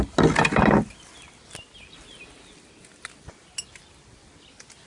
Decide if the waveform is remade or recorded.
recorded